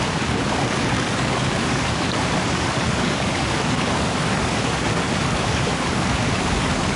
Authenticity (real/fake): fake